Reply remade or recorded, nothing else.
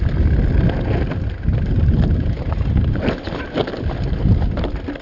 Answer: recorded